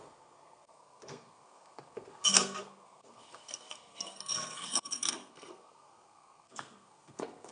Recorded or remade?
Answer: remade